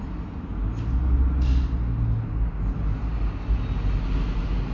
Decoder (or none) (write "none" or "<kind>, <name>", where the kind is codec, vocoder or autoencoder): none